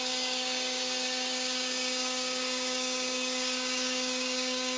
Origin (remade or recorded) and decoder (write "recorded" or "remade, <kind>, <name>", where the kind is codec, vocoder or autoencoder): remade, codec, DAC